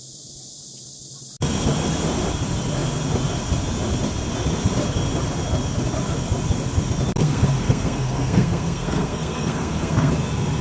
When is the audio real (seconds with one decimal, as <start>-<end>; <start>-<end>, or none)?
0.0-7.2; 10.1-10.6